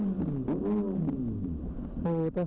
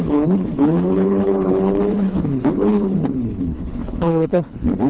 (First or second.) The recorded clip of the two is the first